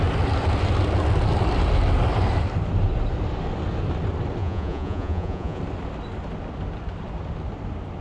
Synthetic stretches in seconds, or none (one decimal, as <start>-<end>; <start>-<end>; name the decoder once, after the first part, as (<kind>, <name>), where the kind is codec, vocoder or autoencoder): 4.4-5.6 (vocoder, Vocos)